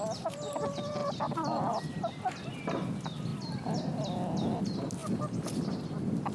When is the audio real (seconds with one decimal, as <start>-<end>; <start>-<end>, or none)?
0.0-6.3